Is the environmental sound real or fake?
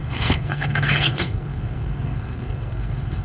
fake